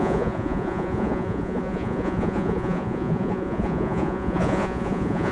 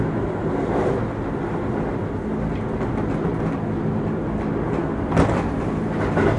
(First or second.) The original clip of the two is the second